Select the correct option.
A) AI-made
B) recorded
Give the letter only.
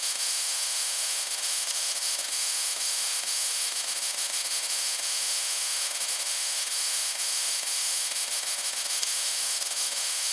A